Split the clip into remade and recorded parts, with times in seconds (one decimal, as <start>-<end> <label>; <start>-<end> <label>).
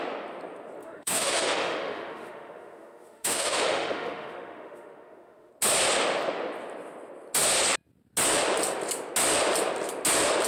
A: 0.0-0.8 recorded; 0.8-5.5 remade; 5.5-10.5 recorded